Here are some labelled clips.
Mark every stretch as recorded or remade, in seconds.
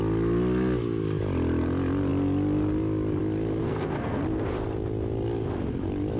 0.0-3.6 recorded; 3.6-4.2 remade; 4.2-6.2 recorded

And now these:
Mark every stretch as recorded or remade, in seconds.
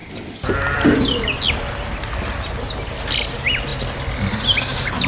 0.0-5.1 recorded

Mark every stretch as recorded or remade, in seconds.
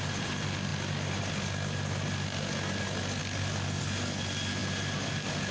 0.0-5.5 recorded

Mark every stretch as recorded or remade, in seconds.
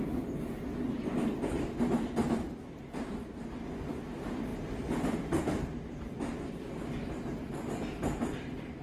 0.0-4.5 recorded; 4.5-7.5 remade; 7.5-8.8 recorded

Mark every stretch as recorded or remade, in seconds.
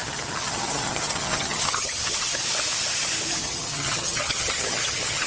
0.0-2.4 remade; 2.4-3.4 recorded; 3.4-5.3 remade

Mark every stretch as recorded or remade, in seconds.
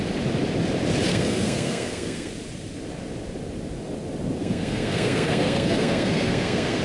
0.0-1.1 recorded; 1.1-2.3 remade; 2.3-4.4 recorded; 4.4-6.8 remade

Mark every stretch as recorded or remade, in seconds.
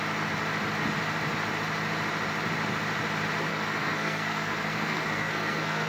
0.0-3.5 recorded; 3.5-5.9 remade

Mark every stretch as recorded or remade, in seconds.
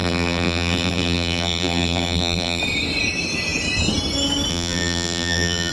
0.0-2.6 remade; 2.6-4.5 recorded; 4.5-5.7 remade